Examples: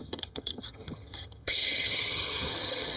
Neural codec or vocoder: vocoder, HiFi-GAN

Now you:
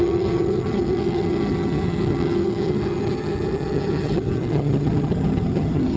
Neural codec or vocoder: vocoder, HiFi-GAN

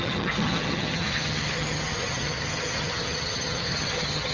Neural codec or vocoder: vocoder, HiFi-GAN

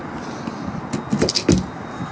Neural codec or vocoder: none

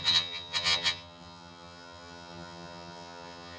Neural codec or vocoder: vocoder, HiFi-GAN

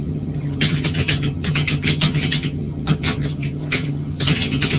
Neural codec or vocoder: vocoder, HiFi-GAN